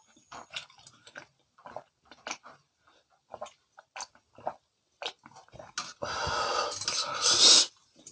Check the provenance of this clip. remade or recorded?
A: recorded